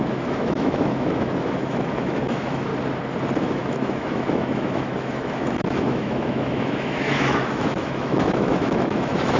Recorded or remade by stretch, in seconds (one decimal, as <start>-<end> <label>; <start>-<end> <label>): 0.0-2.7 remade; 2.7-3.4 recorded; 3.4-9.4 remade